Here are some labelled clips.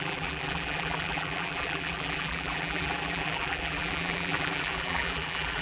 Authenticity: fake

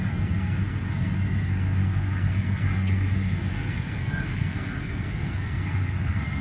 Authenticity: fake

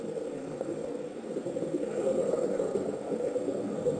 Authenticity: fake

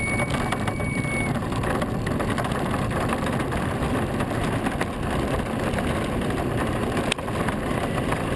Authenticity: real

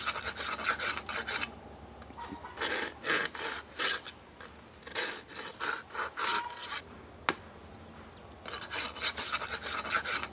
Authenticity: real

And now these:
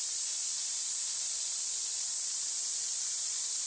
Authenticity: fake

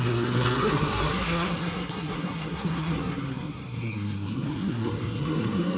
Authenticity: fake